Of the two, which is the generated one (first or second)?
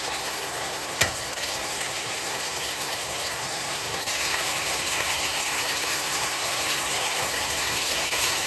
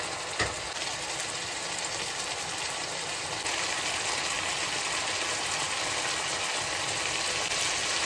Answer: first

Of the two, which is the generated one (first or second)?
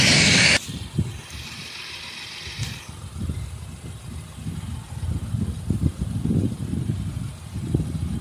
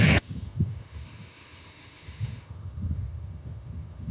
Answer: second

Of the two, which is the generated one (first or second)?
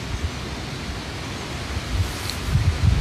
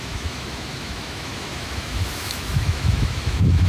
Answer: second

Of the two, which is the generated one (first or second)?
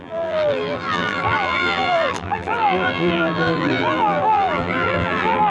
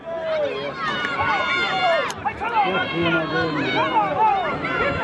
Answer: first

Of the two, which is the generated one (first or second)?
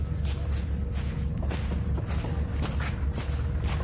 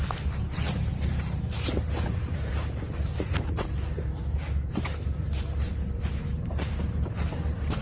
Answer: second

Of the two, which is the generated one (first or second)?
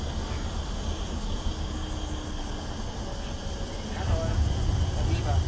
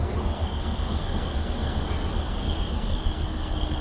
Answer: second